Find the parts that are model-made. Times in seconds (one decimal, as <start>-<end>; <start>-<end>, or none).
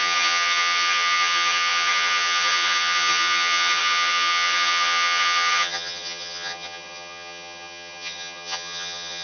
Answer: 0.0-9.2